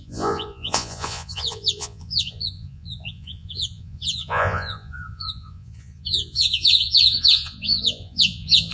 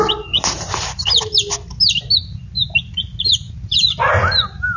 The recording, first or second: second